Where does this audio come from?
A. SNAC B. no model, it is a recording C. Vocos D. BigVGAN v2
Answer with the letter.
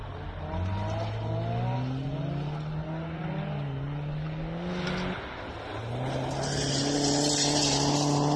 B